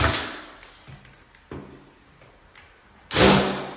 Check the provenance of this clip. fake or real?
real